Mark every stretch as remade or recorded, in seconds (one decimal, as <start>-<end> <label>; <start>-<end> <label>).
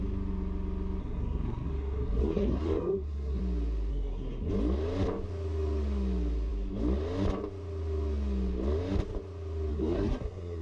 0.0-1.0 recorded; 1.0-3.4 remade; 3.4-3.9 recorded; 3.9-4.5 remade; 4.5-9.7 recorded; 9.7-10.6 remade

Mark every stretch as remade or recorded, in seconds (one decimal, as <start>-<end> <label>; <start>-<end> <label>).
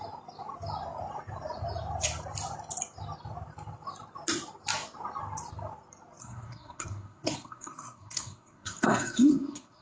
0.0-6.2 recorded; 6.2-9.8 remade